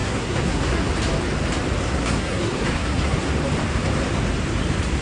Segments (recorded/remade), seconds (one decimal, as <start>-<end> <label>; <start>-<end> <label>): 0.0-0.9 remade; 0.9-1.8 recorded; 1.8-3.3 remade; 3.3-5.0 recorded